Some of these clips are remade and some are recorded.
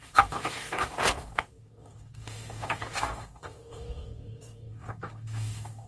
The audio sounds remade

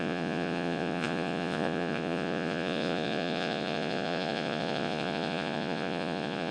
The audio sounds remade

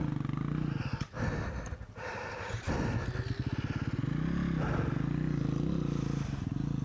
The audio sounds recorded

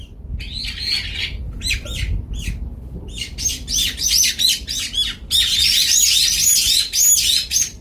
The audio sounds recorded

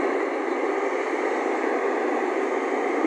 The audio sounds recorded